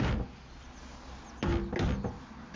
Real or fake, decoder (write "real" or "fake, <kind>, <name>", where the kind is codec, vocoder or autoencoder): real